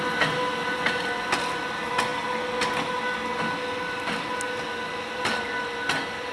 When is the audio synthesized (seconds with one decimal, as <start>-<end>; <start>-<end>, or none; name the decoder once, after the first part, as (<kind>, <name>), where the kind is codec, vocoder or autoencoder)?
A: none